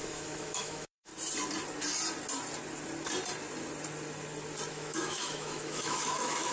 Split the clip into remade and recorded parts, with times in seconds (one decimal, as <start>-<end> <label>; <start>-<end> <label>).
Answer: 0.0-1.1 remade; 1.1-4.7 recorded; 4.7-6.5 remade